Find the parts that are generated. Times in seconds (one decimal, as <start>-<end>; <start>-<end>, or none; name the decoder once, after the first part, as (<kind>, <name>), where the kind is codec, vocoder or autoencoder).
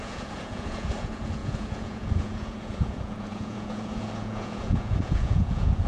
0.0-5.9 (vocoder, Vocos)